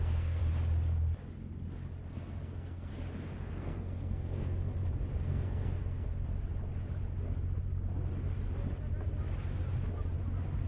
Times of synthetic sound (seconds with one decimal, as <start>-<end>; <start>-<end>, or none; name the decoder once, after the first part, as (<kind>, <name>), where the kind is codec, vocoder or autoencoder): 0.0-0.4 (codec, SNAC); 2.1-2.9; 3.5-4.7; 5.2-6.1